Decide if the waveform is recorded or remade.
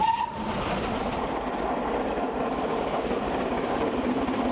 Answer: recorded